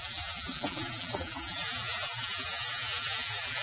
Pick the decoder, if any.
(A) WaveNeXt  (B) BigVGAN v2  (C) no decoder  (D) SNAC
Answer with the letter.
B